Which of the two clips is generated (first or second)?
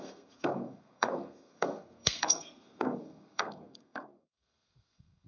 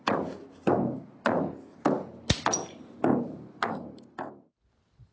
first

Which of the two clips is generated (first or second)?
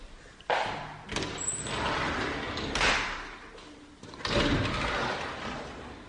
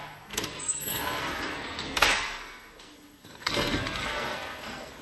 second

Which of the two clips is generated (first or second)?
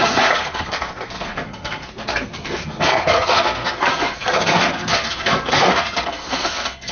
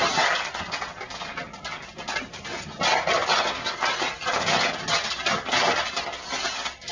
first